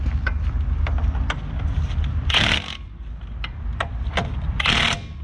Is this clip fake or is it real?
real